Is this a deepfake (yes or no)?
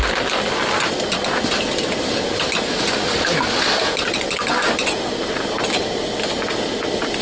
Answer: no